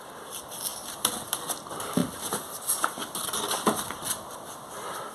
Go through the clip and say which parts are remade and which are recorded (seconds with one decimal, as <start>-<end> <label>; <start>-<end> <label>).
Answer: 0.0-5.1 recorded